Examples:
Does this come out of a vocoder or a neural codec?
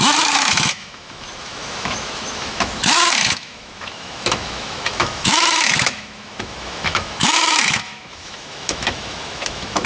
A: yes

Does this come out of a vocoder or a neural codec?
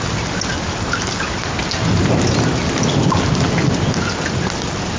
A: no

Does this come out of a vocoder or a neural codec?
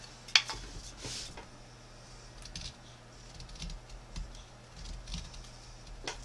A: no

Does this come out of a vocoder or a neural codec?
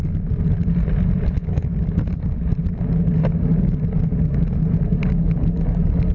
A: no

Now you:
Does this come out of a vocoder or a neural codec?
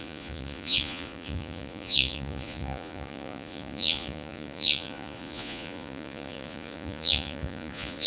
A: yes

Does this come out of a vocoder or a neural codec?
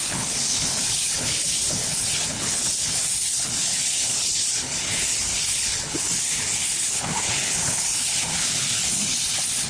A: yes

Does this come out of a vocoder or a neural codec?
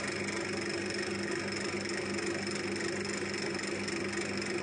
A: no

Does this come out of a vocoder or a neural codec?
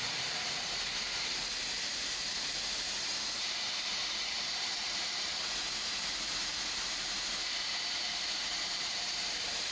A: yes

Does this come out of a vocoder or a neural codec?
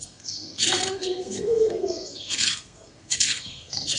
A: yes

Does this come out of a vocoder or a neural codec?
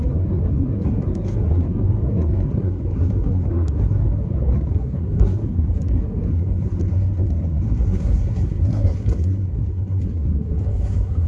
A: yes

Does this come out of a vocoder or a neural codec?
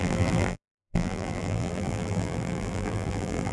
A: yes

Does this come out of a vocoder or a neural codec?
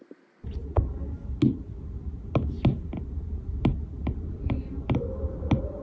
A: no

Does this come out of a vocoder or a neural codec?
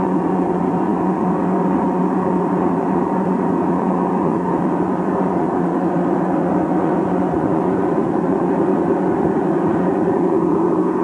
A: yes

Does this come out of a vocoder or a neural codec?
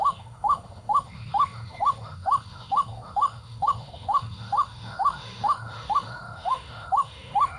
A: yes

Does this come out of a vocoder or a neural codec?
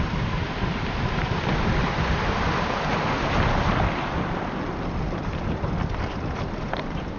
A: no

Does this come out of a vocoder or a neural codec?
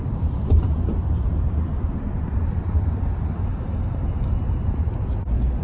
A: yes